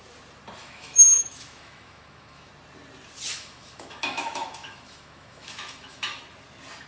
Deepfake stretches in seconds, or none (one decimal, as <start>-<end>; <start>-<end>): 0.6-2.5; 3.3-6.2